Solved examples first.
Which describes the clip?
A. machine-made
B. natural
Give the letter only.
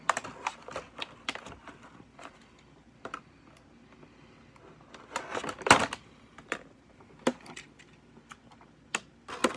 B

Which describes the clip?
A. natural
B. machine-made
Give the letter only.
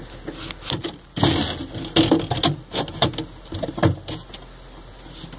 A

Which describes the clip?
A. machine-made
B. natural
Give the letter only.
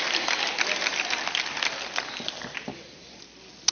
B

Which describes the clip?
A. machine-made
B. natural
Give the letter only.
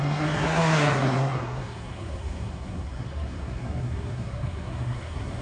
A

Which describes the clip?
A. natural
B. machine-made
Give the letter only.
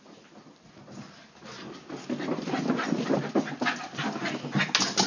A